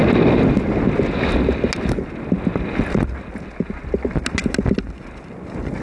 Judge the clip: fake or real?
real